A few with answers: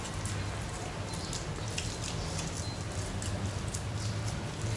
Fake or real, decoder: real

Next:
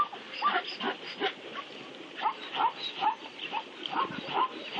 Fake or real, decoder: real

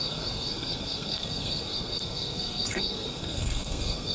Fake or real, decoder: fake, codec, SNAC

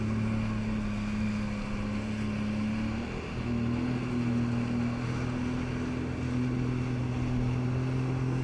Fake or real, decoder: real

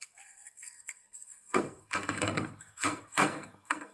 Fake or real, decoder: fake, codec, SNAC